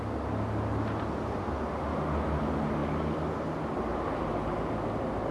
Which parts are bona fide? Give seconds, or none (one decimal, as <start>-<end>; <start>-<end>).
0.0-5.3